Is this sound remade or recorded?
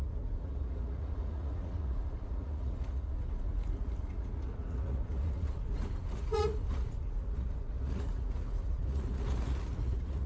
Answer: remade